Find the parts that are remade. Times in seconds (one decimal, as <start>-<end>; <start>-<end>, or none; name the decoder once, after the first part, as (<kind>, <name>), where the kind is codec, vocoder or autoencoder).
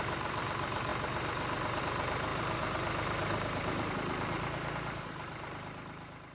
0.0-0.9 (vocoder, BigVGAN v2); 1.8-6.3